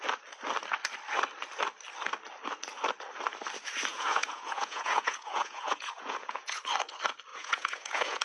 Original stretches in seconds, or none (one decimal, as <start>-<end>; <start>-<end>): 0.0-3.9; 6.6-7.3

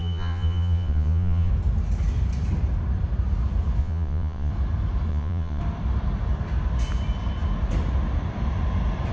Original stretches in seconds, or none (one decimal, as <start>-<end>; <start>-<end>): 1.5-3.8; 4.5-5.1; 5.6-9.1

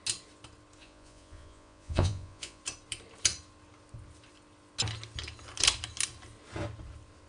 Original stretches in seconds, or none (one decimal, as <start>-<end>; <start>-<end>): 0.0-0.8; 2.6-7.3